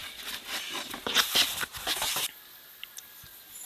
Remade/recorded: recorded